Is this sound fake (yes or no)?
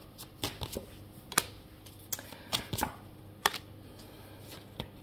no